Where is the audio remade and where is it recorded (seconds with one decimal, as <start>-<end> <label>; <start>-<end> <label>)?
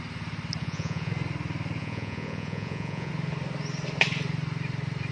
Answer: 0.0-0.6 recorded; 0.6-1.1 remade; 1.1-1.8 recorded; 1.8-3.1 remade; 3.1-5.1 recorded